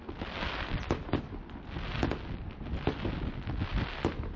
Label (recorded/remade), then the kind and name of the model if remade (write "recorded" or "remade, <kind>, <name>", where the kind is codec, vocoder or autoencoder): recorded